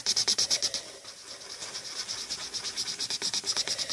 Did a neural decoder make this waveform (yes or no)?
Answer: no